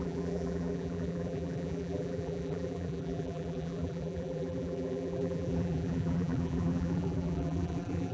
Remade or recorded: remade